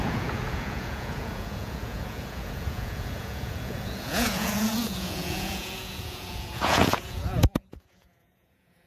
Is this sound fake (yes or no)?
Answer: yes